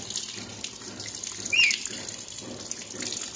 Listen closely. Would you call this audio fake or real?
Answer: real